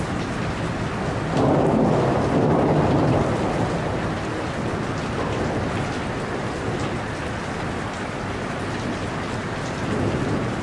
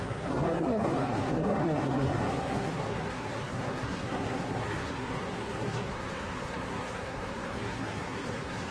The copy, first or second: second